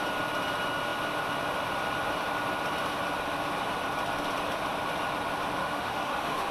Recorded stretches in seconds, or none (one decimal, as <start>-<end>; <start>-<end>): 0.0-5.6